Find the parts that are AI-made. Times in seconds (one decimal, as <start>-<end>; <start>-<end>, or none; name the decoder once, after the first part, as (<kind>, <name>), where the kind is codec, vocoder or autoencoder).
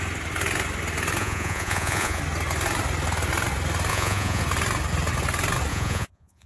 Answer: 1.2-2.2 (vocoder, Vocos); 3.9-4.4; 5.7-6.5